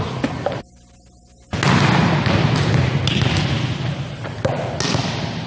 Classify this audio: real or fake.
real